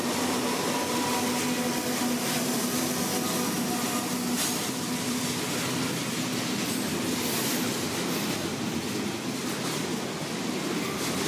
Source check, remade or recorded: recorded